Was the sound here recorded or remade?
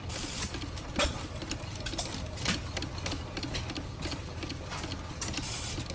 recorded